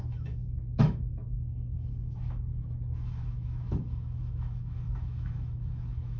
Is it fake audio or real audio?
fake